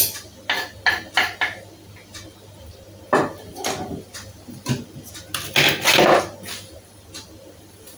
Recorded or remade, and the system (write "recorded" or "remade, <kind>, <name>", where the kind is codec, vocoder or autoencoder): recorded